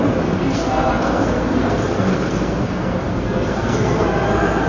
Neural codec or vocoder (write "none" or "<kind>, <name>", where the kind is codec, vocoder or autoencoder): codec, SNAC